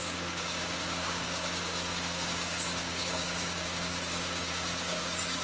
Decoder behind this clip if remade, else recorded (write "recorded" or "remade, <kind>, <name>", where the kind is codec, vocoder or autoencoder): remade, codec, DAC